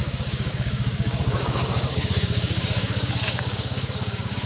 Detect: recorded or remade remade